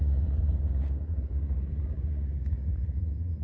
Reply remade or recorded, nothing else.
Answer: remade